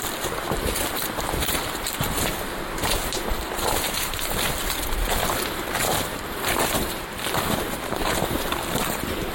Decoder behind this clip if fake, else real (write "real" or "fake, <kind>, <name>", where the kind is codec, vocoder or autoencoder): fake, vocoder, BigVGAN v2